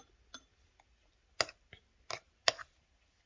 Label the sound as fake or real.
real